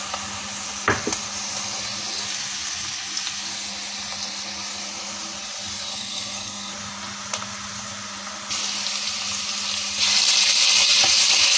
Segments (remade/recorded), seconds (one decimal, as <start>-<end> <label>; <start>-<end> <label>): 0.0-5.9 recorded; 5.9-6.7 remade; 6.7-11.6 recorded